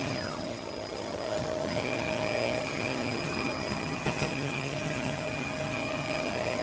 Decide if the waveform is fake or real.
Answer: fake